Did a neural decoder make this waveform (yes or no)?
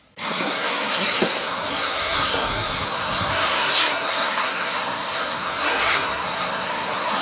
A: yes